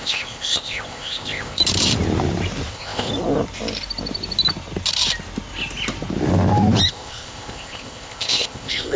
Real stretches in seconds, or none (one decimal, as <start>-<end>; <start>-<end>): 1.6-2.7; 3.1-6.9